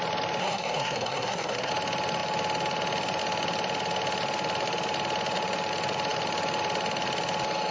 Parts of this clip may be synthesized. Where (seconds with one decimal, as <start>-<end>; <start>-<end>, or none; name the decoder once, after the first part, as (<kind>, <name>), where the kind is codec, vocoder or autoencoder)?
0.4-1.7 (codec, SNAC)